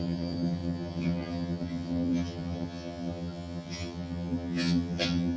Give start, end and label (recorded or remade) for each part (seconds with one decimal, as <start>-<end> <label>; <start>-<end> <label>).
0.0-5.4 remade